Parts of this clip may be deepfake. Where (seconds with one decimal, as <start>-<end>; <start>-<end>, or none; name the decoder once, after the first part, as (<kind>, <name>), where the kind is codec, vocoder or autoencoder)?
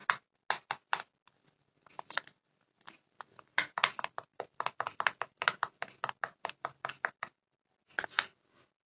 none